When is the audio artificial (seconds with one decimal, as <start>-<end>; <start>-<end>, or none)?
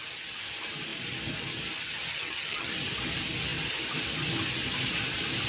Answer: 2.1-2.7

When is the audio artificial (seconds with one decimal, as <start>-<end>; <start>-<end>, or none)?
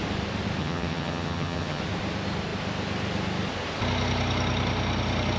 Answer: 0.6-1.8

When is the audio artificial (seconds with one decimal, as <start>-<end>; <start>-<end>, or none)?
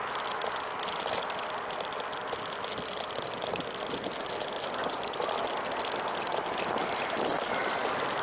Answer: none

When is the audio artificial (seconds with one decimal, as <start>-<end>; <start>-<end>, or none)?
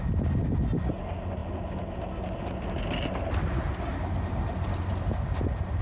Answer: none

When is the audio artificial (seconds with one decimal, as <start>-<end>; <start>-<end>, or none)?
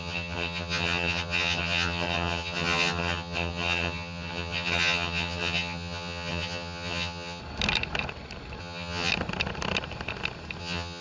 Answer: 0.0-7.4; 8.6-9.1; 10.6-11.0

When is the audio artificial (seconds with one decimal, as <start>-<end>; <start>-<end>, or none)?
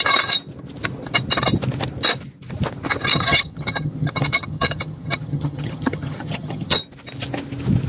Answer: 3.1-6.8